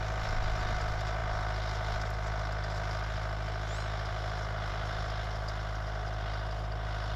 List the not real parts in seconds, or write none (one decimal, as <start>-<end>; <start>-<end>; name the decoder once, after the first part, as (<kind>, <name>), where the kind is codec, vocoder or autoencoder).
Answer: none